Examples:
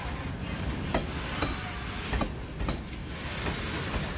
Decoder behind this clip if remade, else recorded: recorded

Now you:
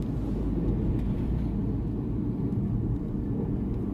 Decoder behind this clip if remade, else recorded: recorded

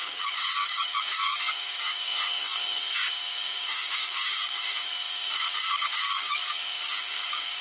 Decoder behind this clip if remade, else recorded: remade, codec, DAC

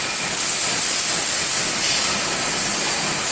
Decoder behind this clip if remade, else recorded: recorded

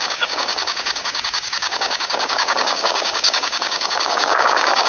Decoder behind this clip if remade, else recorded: remade, codec, DAC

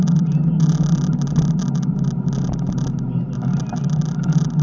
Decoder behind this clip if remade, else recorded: recorded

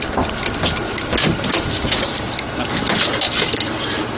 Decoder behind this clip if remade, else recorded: recorded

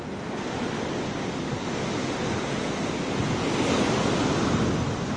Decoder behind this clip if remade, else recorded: recorded